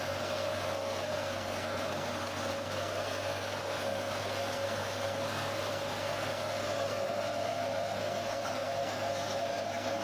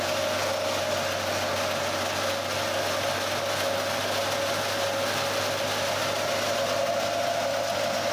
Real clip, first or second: second